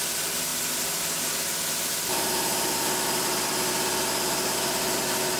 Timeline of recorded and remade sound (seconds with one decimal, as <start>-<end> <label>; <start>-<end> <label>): 0.0-5.4 recorded